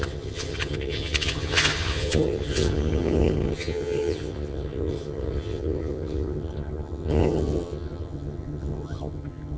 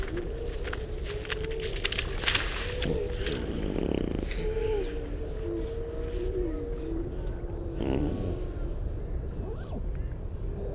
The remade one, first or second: first